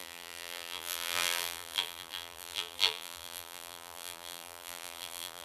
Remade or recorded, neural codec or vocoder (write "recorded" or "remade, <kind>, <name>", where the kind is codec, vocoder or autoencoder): remade, vocoder, BigVGAN v2